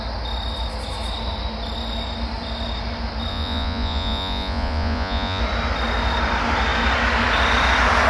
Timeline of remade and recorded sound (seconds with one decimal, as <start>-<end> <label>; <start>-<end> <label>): 0.0-3.3 recorded; 3.3-5.4 remade; 5.4-8.1 recorded